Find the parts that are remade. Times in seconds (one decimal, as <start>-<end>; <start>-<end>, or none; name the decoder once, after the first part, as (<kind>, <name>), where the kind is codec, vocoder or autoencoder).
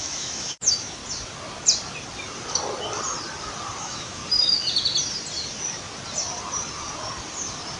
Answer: 0.0-1.0 (autoencoder, DAC-VAE); 3.8-4.2